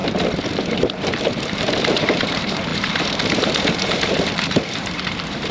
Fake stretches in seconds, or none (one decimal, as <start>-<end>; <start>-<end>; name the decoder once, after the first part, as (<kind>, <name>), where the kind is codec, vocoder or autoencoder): 0.7-5.5 (vocoder, BigVGAN v2)